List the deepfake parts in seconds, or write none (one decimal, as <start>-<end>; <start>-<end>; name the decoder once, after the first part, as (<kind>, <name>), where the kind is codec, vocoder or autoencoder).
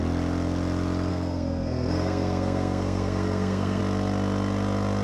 1.1-3.8 (codec, SNAC)